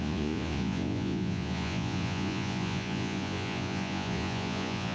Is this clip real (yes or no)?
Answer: no